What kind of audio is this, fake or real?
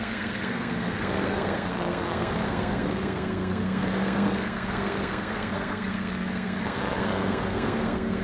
fake